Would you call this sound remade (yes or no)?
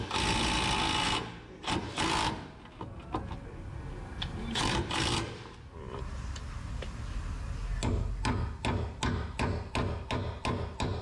no